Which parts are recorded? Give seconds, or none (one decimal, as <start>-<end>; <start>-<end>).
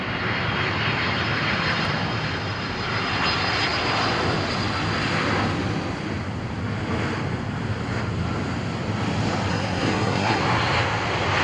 0.0-9.5; 10.4-11.4